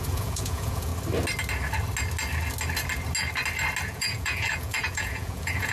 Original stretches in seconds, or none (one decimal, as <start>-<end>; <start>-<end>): 0.9-3.8